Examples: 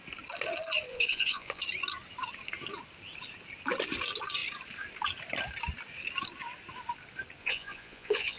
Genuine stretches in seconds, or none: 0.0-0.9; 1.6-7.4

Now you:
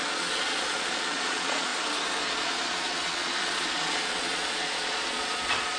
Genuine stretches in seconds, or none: 1.7-2.2

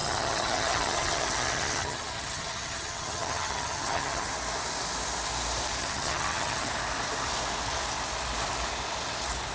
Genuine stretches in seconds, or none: 4.3-5.8; 6.7-9.5

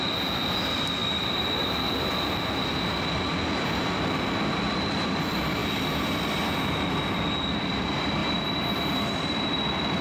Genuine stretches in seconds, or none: 0.0-1.0; 2.1-8.2; 9.5-10.0

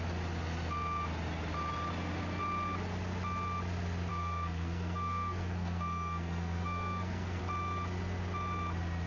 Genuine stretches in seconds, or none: 0.0-4.1; 7.4-9.1

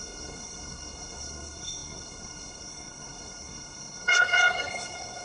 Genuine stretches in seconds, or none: none

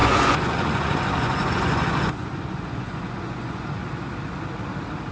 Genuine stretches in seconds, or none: 3.8-5.1

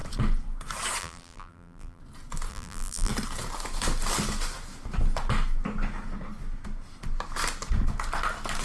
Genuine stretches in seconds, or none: 0.0-1.0; 2.0-2.5; 3.1-8.6